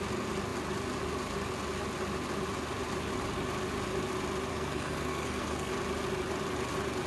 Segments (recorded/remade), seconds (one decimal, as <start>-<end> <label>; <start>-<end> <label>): 0.0-4.5 recorded; 4.5-5.7 remade; 5.7-7.1 recorded